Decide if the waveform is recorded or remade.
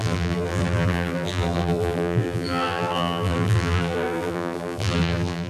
remade